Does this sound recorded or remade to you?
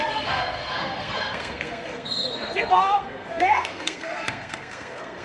remade